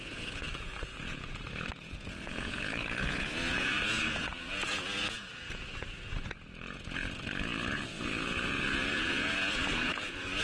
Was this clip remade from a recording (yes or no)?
yes